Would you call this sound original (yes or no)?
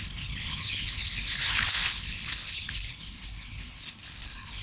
no